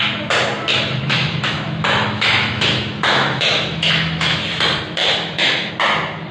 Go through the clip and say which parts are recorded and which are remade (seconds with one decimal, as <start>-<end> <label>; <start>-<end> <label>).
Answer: 0.0-0.7 recorded; 0.7-4.4 remade; 4.4-5.0 recorded; 5.0-5.7 remade; 5.7-6.3 recorded